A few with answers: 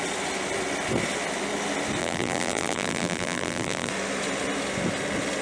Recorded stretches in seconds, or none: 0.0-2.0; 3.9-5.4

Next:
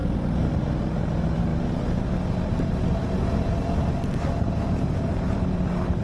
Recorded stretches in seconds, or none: 0.0-1.0; 1.5-5.1

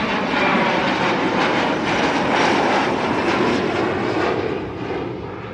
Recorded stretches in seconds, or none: 0.0-0.5; 3.8-5.5

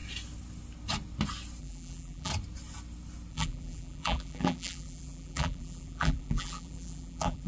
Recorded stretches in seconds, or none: 0.0-1.6; 2.3-3.3